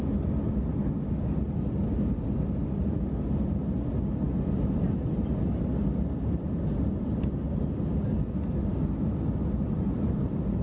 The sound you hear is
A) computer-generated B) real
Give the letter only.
B